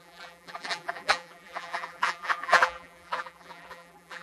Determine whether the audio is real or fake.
fake